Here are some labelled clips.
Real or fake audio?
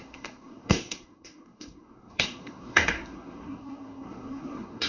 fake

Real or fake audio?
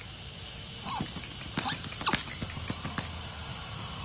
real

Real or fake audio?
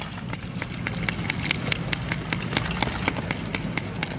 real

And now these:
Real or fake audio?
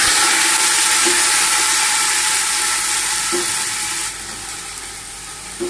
real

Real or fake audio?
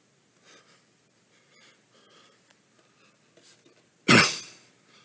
real